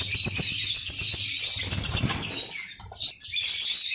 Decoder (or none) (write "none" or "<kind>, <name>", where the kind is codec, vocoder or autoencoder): none